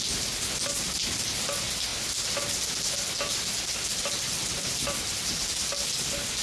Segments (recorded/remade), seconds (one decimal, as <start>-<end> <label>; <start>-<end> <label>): 0.0-6.4 recorded